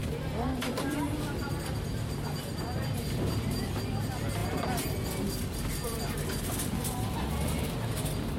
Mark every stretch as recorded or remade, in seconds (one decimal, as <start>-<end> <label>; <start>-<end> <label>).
0.0-3.7 remade; 3.7-4.4 recorded; 4.4-7.3 remade; 7.3-8.4 recorded